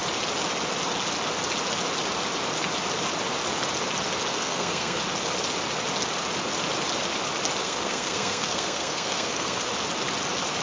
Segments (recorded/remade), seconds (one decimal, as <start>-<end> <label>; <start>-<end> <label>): 0.0-4.3 recorded; 4.3-5.0 remade; 5.0-7.6 recorded; 7.6-9.7 remade; 9.7-10.6 recorded